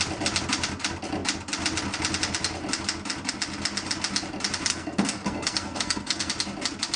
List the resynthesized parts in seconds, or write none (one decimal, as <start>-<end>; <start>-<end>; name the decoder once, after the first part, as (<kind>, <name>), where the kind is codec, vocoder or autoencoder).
4.7-6.3 (codec, SNAC)